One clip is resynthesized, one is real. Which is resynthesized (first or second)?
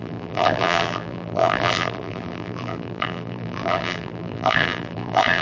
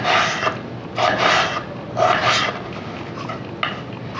first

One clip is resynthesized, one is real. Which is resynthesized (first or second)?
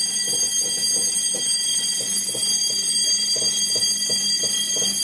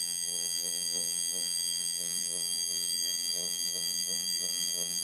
second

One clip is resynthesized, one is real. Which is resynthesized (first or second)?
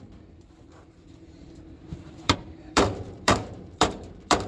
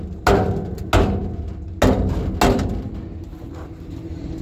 first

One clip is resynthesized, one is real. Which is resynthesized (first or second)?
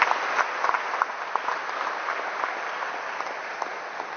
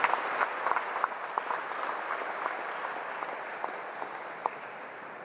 second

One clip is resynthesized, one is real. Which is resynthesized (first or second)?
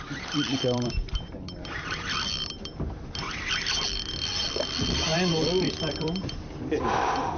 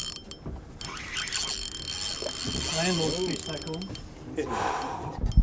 first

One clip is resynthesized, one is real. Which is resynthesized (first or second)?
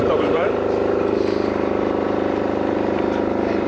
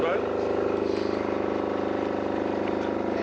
first